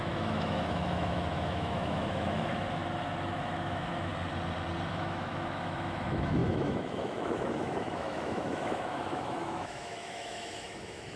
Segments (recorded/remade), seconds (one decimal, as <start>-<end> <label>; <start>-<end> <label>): 0.0-2.8 remade; 2.8-3.3 recorded; 3.3-4.1 remade; 4.1-4.9 recorded; 4.9-11.2 remade